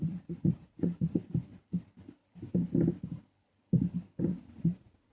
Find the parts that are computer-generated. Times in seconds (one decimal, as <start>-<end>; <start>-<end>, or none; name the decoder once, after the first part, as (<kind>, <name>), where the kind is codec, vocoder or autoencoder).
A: 0.0-1.2 (vocoder, Vocos); 4.3-5.1